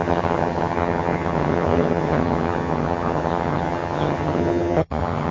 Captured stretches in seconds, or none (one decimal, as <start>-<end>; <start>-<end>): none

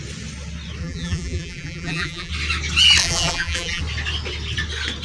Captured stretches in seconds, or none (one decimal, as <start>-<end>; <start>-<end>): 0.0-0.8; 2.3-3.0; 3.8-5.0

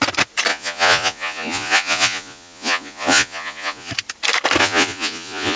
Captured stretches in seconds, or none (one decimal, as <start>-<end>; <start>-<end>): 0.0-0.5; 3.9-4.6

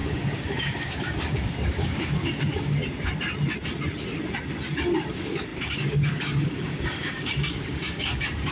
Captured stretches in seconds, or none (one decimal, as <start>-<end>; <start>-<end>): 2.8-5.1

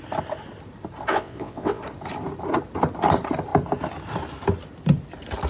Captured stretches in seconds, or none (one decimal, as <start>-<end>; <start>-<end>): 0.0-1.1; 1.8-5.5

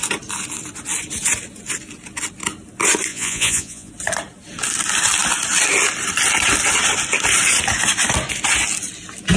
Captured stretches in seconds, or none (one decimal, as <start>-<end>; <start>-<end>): 0.0-3.1; 3.9-9.4

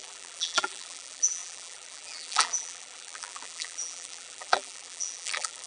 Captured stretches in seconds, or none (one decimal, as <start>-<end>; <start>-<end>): none